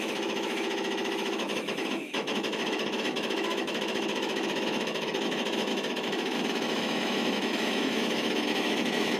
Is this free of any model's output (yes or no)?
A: no